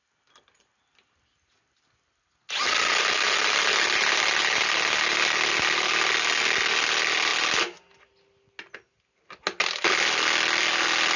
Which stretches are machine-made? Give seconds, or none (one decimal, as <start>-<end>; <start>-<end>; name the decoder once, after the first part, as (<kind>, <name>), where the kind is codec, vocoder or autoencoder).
none